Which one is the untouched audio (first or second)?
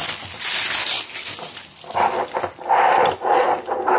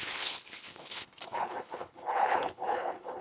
first